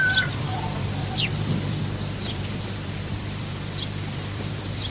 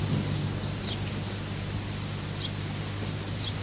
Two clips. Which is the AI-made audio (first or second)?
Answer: first